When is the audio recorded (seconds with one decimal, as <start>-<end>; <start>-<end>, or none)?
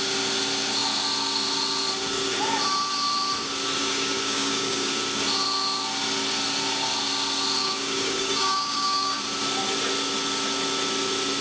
0.0-3.8; 4.9-7.6; 9.2-11.4